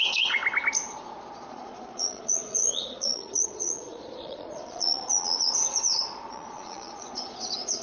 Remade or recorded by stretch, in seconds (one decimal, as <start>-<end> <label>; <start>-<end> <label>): 0.0-0.4 remade; 0.4-1.3 recorded; 1.3-7.8 remade